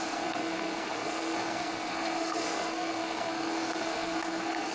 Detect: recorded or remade remade